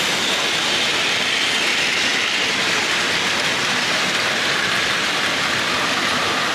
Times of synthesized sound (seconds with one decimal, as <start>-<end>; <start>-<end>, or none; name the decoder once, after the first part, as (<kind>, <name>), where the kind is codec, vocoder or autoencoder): none